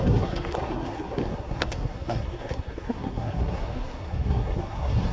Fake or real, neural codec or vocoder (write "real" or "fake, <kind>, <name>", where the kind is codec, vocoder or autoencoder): fake, codec, SNAC